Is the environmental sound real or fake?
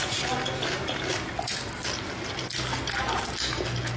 real